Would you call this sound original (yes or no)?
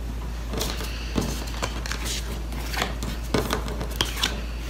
yes